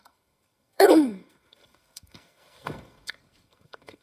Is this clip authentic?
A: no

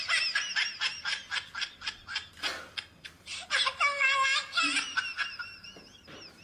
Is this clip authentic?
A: yes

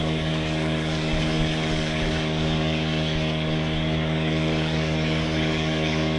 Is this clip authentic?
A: no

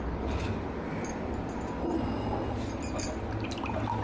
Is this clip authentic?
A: yes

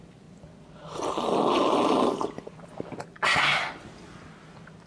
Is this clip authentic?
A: yes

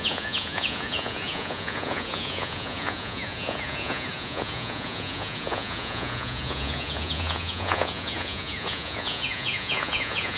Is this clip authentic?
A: no